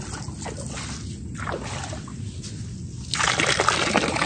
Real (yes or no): yes